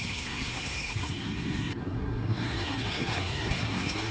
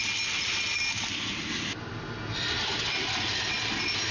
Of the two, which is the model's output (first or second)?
first